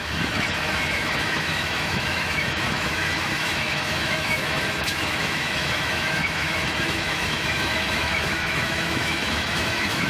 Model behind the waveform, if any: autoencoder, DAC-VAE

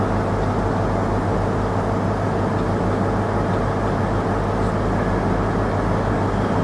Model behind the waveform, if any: none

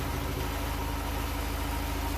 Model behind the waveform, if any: none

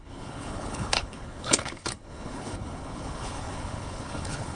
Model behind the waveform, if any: codec, HILCodec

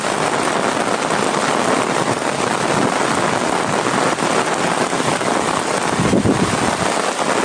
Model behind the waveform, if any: none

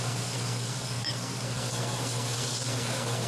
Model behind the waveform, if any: codec, SNAC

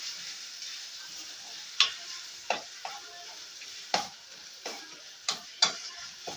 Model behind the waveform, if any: vocoder, BigVGAN v2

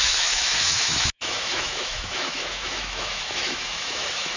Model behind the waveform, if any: autoencoder, DAC-VAE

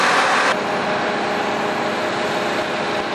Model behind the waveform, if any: none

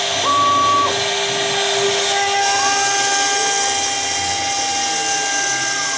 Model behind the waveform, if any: none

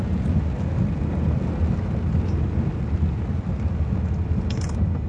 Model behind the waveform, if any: none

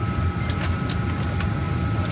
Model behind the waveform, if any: none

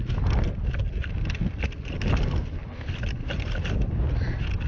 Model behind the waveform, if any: none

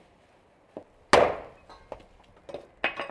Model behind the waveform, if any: none